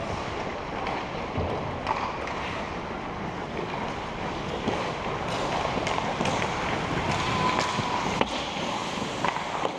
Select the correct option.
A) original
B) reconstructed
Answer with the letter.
A